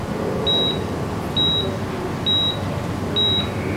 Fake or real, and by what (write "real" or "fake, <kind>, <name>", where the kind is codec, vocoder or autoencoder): real